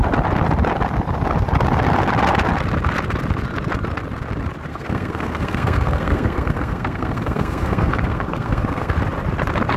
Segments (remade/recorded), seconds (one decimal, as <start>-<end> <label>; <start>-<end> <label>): 0.0-4.7 recorded; 4.7-8.9 remade; 8.9-9.8 recorded